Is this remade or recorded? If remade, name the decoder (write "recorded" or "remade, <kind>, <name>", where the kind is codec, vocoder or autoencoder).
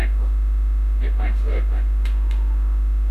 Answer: remade, autoencoder, DAC-VAE